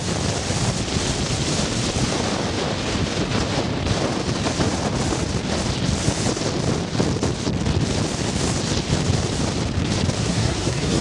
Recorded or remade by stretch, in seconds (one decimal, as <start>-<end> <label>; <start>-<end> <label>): 0.0-10.2 recorded; 10.2-11.0 remade